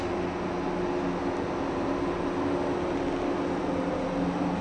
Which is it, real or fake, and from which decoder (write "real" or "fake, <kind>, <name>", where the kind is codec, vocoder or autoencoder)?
real